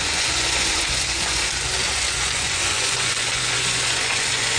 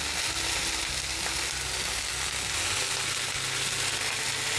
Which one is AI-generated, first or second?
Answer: first